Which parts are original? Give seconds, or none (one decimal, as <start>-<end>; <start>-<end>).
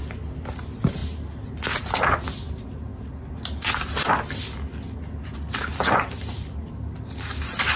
0.0-7.8